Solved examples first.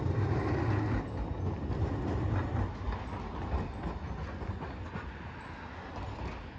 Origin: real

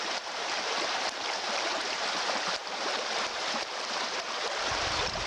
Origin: fake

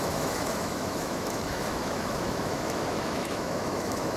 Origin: fake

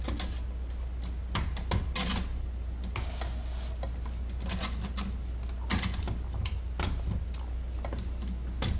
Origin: real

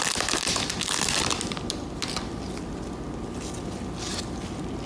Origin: real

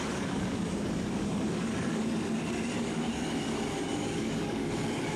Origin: fake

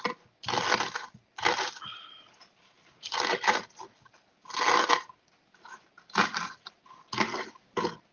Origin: real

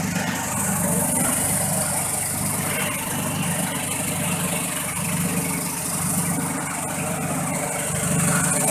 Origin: real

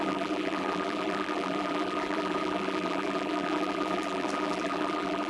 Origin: fake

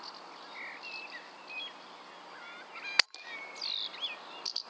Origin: real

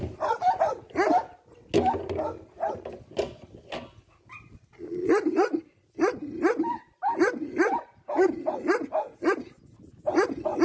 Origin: real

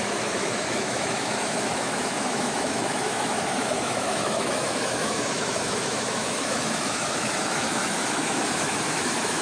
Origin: fake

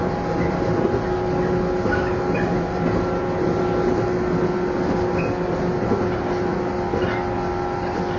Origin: real